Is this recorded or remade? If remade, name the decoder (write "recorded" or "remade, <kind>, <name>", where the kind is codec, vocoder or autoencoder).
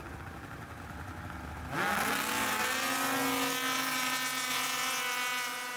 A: recorded